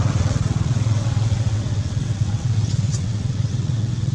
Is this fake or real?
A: fake